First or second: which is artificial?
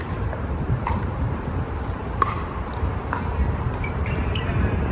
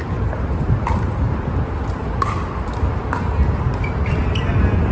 first